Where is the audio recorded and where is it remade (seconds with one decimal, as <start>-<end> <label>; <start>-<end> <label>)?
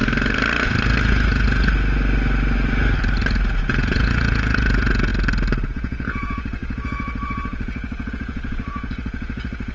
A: 0.0-3.6 recorded; 3.6-5.1 remade; 5.1-5.7 recorded; 5.7-9.7 remade